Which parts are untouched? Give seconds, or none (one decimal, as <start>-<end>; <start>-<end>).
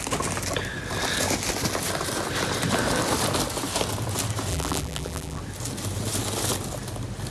0.0-4.5; 5.4-7.3